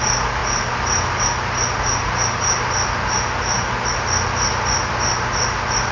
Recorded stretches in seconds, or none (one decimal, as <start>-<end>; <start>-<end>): 0.0-5.9